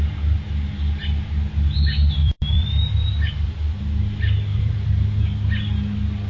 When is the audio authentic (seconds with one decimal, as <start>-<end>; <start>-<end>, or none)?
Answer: 0.0-2.2; 3.8-4.5; 5.2-6.3